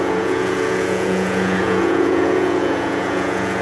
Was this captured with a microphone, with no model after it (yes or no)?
no